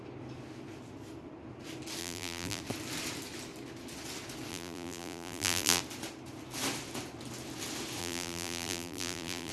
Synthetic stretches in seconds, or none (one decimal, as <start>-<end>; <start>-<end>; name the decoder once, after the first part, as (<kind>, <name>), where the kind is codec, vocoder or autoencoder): 2.0-2.6 (vocoder, BigVGAN v2); 4.5-5.8; 8.0-9.5